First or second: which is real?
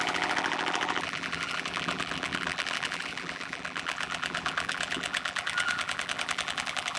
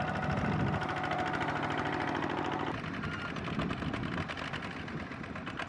second